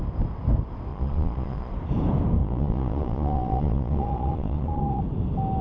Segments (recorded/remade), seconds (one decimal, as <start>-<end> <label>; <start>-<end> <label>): 0.0-0.9 recorded; 0.9-1.7 remade; 1.7-2.4 recorded; 2.4-5.0 remade; 5.0-5.6 recorded